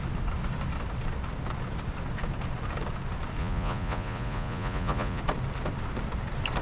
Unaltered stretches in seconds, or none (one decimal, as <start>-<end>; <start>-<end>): 0.0-3.4; 5.2-6.6